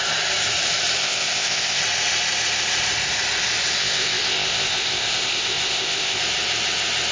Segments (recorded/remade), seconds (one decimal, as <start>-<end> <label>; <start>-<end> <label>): 0.0-1.0 recorded; 1.0-1.8 remade; 1.8-3.8 recorded; 3.8-6.2 remade; 6.2-7.1 recorded